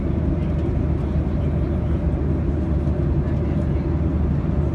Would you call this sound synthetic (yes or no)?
no